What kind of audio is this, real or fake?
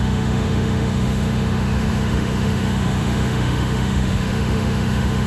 fake